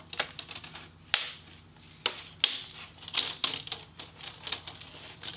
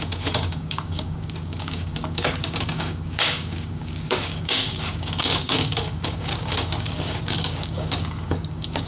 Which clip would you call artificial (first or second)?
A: second